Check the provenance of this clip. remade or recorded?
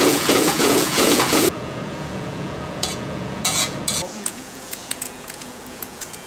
remade